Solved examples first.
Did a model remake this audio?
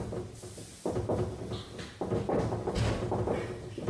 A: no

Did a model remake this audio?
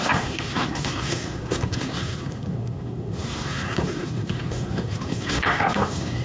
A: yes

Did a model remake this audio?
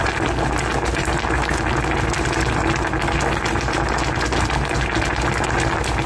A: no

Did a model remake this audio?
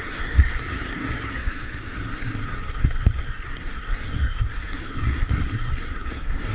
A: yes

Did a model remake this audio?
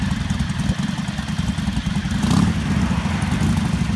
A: no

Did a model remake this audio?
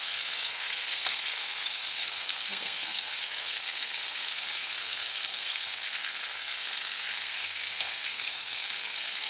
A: yes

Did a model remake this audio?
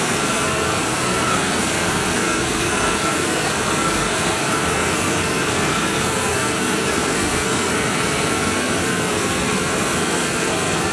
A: yes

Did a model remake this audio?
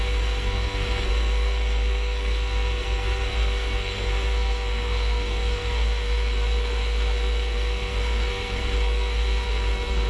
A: yes